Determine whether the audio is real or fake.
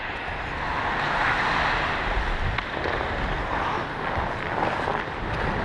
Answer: real